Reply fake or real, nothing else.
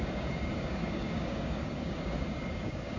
fake